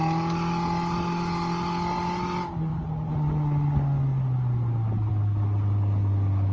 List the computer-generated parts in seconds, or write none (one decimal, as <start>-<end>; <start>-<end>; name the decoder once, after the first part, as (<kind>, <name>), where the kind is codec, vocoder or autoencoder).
none